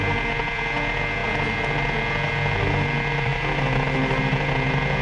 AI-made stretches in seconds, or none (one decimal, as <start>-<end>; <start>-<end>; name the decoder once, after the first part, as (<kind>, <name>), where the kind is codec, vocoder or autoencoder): none